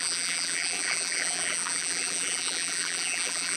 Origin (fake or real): fake